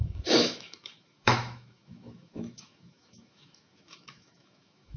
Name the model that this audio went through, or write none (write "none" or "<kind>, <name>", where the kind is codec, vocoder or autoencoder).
autoencoder, DAC-VAE